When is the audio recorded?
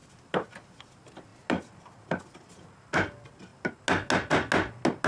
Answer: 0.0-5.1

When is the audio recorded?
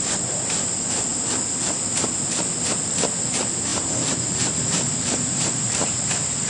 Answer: 0.0-3.7; 6.0-6.5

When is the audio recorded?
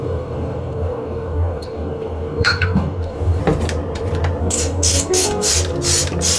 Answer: 3.4-4.4; 5.5-6.4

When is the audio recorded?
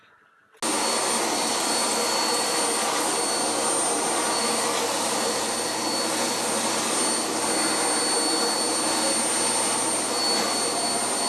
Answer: 0.0-11.3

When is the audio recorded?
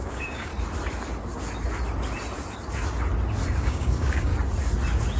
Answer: 0.5-3.6; 4.3-5.2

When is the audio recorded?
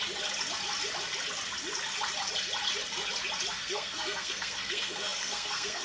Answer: 0.0-3.5